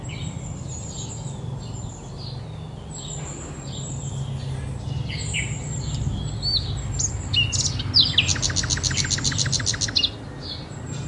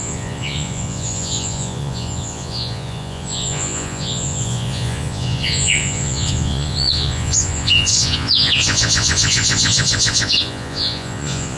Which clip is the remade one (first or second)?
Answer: second